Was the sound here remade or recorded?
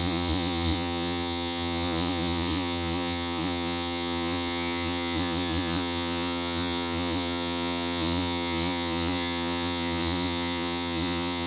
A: remade